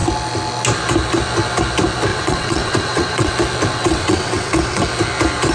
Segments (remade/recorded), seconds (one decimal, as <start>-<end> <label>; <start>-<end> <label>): 0.0-2.1 recorded; 2.1-3.3 remade; 3.3-3.7 recorded; 3.7-4.9 remade; 4.9-5.5 recorded